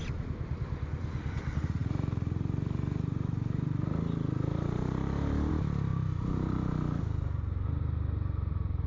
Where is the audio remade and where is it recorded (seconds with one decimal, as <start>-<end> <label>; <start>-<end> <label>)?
0.0-8.9 recorded